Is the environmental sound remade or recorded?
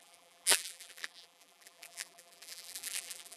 remade